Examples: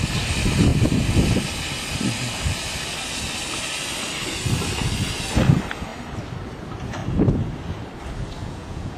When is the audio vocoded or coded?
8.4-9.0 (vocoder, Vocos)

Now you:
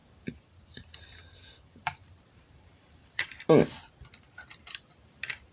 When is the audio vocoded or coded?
0.0-3.3 (vocoder, BigVGAN v2)